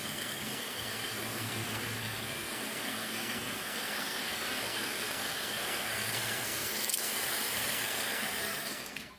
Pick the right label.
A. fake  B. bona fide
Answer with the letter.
A